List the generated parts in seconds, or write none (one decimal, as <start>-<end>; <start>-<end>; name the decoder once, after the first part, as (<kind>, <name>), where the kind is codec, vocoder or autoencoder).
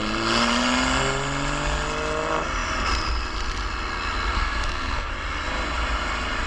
4.3-5.1 (codec, SNAC)